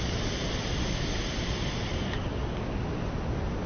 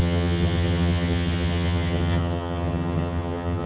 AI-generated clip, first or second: second